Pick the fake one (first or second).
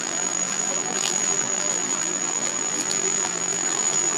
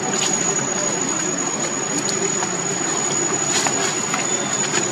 first